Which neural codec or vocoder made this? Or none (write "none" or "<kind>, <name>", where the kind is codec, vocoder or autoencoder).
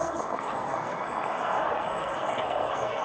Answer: codec, SNAC